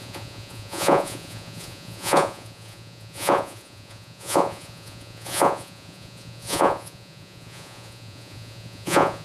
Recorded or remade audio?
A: remade